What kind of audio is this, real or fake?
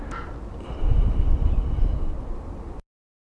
real